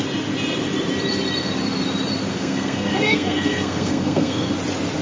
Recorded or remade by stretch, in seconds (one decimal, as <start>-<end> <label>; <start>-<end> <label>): 0.0-2.3 recorded; 2.3-4.5 remade; 4.5-5.0 recorded